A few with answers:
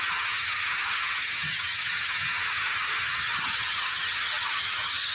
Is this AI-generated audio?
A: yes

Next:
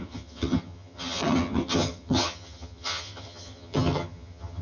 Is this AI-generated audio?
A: yes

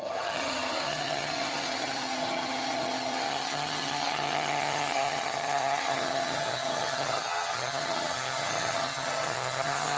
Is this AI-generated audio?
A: yes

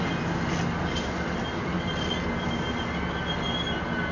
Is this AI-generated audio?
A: no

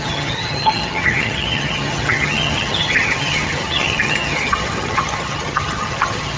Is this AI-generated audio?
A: yes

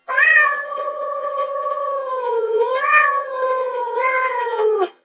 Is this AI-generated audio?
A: yes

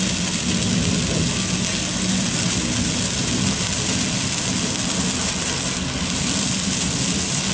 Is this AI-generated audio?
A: no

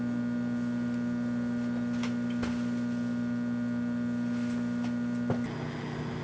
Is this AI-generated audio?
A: no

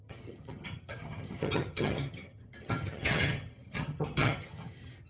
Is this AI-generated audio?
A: yes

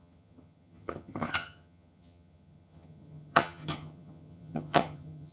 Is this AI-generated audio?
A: yes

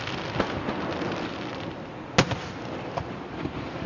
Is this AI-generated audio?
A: no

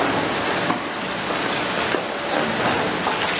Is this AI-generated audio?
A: no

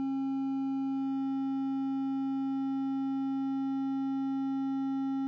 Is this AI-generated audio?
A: no